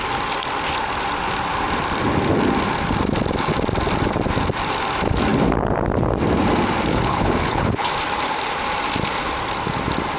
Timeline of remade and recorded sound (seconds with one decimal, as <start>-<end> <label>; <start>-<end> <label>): 0.0-6.9 recorded; 6.9-7.9 remade; 7.9-10.2 recorded